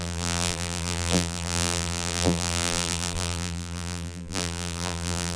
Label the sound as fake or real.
fake